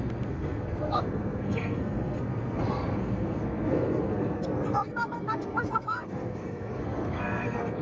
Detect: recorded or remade remade